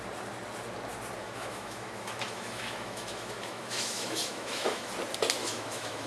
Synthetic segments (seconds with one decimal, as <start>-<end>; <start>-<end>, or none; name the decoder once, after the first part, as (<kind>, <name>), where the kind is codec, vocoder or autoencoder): 1.2-4.9 (autoencoder, DAC-VAE); 5.4-6.1